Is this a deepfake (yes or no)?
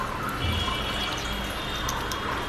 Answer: no